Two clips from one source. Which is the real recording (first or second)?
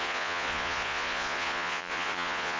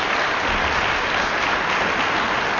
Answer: second